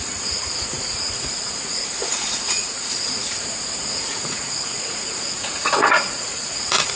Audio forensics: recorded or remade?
remade